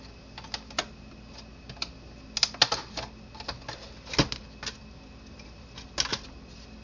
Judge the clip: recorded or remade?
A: recorded